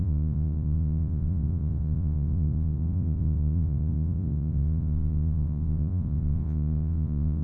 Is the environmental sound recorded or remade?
remade